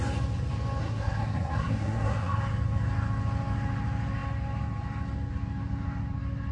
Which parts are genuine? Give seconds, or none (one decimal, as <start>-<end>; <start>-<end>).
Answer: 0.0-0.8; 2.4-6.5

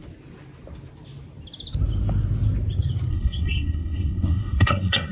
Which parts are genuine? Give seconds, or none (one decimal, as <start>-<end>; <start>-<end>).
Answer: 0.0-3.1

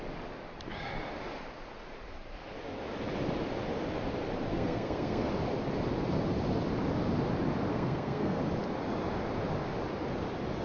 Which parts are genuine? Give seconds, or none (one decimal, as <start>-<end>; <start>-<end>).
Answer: 0.0-4.5; 5.3-7.7; 8.4-10.6

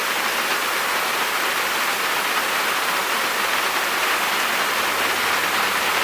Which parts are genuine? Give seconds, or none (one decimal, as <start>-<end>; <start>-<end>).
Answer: 0.0-6.0

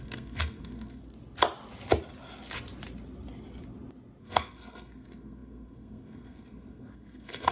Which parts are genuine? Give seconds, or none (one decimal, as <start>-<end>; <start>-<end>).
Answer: 1.0-4.2

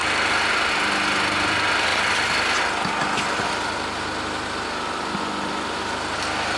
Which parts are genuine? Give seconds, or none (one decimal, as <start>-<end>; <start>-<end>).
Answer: 0.0-6.6